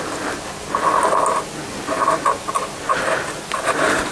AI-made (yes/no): no